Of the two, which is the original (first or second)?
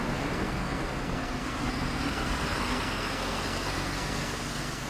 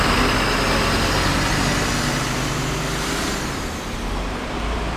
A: second